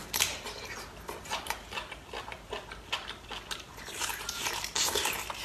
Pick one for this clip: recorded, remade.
recorded